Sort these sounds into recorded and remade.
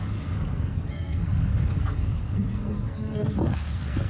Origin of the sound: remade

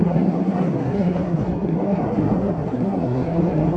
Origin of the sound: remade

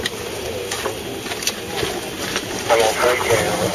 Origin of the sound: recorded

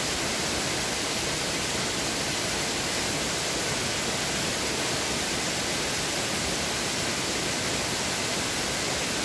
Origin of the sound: recorded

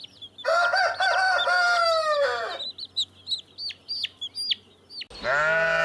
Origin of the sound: recorded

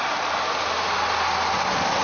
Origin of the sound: recorded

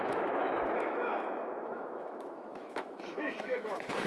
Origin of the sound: remade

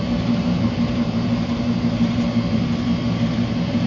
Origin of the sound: remade